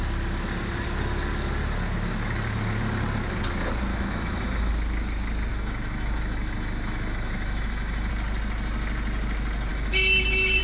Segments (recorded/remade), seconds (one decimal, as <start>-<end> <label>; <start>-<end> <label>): 0.0-3.9 recorded; 3.9-4.7 remade; 4.7-5.5 recorded; 5.5-8.1 remade; 8.1-9.7 recorded; 9.7-10.6 remade

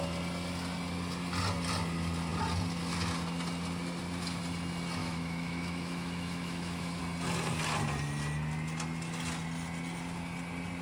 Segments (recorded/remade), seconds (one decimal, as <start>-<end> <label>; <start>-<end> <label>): 0.0-5.0 recorded; 5.0-7.0 remade; 7.0-10.8 recorded

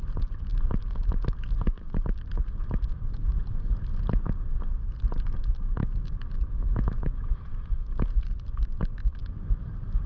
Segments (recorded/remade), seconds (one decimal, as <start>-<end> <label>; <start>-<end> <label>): 0.0-2.9 recorded; 2.9-3.4 remade; 3.4-5.8 recorded; 5.8-7.5 remade; 7.5-9.2 recorded; 9.2-9.7 remade; 9.7-10.1 recorded

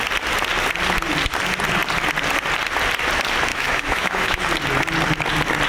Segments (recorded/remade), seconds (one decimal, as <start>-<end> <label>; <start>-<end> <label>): 0.0-3.5 recorded; 3.5-4.4 remade; 4.4-5.7 recorded

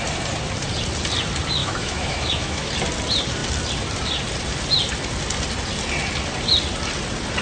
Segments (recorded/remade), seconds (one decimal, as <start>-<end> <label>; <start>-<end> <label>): 0.0-1.6 recorded; 1.6-2.7 remade; 2.7-7.4 recorded

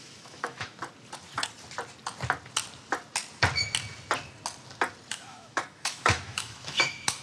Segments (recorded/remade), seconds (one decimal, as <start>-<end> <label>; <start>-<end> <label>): 0.0-0.8 remade; 0.8-5.1 recorded; 5.1-7.2 remade

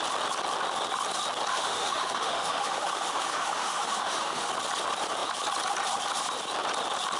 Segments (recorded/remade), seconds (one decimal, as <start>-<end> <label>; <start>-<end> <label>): 0.0-1.5 recorded; 1.5-4.5 remade; 4.5-7.2 recorded